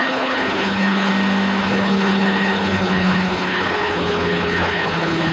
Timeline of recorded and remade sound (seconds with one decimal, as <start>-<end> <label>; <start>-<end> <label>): 0.0-1.1 remade; 1.1-1.6 recorded; 1.6-5.3 remade